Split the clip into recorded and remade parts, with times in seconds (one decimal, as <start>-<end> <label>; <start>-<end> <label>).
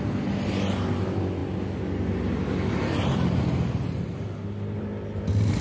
0.0-5.6 recorded